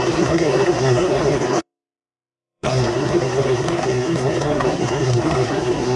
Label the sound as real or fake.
fake